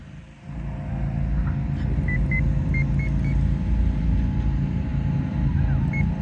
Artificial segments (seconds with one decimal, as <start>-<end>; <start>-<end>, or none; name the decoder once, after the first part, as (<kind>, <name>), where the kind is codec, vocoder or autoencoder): none